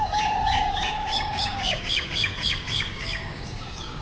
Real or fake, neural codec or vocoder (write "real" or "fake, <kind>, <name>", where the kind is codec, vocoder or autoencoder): fake, codec, DAC